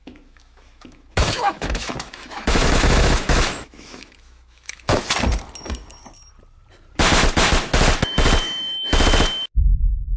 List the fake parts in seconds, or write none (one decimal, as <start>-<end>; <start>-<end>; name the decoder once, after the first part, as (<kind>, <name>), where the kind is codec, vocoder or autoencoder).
0.0-5.1 (autoencoder, DAC-VAE)